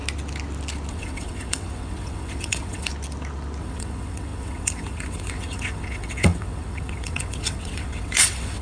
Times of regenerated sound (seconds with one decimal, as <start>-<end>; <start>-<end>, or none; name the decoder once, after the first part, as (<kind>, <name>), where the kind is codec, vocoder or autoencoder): 0.9-2.9 (vocoder, WaveNeXt); 3.6-8.6